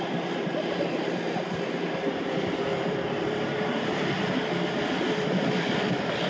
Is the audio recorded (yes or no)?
no